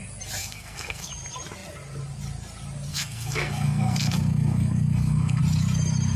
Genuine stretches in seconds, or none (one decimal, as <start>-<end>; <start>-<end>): 0.0-0.4; 1.1-2.9; 5.4-6.2